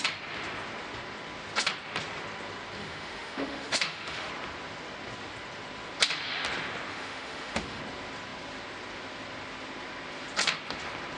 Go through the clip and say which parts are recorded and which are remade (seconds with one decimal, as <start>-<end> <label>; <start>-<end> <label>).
0.0-2.8 recorded; 2.8-4.3 remade; 4.3-6.9 recorded; 6.9-7.8 remade; 7.8-11.2 recorded